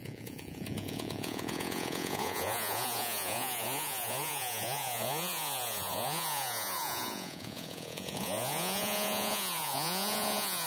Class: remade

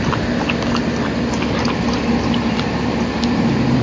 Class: recorded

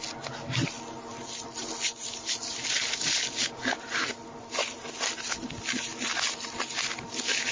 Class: recorded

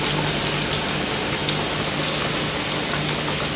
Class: recorded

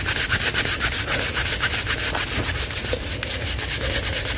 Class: recorded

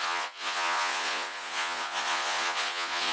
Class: remade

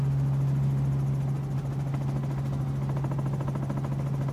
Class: recorded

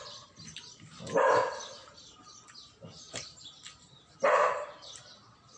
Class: recorded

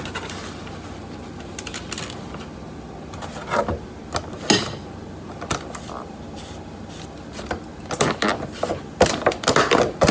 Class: recorded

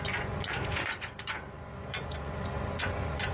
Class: remade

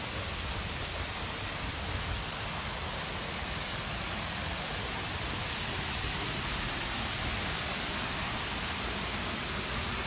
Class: recorded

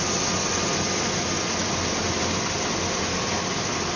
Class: recorded